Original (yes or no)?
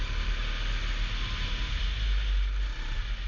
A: yes